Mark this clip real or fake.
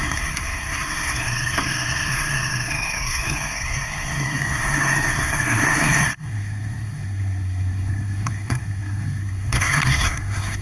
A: fake